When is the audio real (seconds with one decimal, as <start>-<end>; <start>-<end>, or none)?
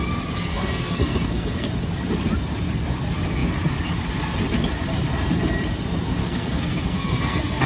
0.0-0.5; 1.7-6.2